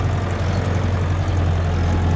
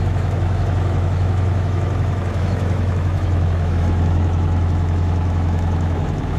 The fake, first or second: second